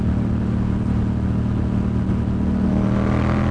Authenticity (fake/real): real